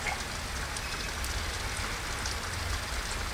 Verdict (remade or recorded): recorded